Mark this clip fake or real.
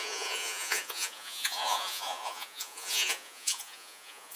fake